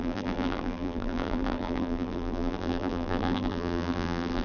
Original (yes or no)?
no